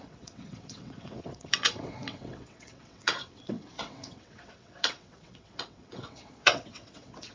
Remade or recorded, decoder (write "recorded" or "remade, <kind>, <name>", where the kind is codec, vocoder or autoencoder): remade, vocoder, WaveNeXt